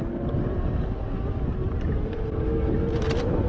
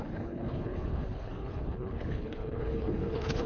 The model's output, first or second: second